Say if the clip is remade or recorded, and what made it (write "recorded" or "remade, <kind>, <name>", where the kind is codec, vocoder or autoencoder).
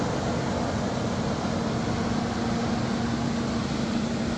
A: recorded